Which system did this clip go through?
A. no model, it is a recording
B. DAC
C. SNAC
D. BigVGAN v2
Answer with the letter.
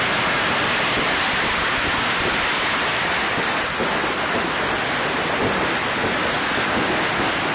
A